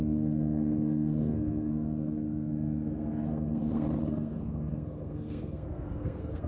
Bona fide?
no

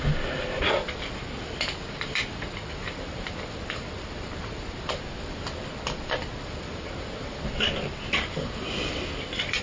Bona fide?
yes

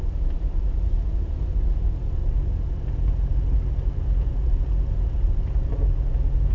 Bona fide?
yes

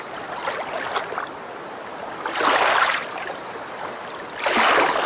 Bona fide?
yes